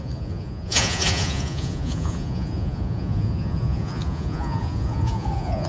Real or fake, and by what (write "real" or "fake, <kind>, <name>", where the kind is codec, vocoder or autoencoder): fake, vocoder, Vocos